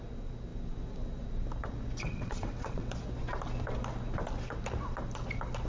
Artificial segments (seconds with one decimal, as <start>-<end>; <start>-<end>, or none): 2.0-2.9